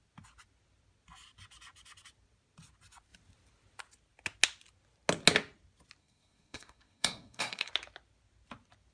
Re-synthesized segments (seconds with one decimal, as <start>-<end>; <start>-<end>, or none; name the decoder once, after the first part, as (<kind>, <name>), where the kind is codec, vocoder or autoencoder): 6.0-7.7 (codec, SNAC)